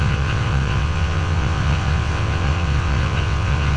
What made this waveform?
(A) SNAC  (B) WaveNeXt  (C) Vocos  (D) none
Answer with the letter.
B